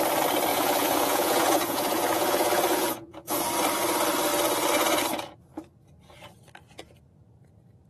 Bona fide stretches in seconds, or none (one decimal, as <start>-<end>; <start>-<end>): 0.0-0.5; 3.5-7.9